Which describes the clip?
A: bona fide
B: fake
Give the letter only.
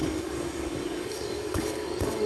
B